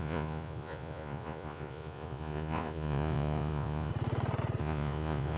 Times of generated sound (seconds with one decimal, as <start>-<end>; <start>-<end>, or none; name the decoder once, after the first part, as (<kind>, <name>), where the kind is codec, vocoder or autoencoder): 0.0-3.9 (vocoder, Vocos); 4.6-5.4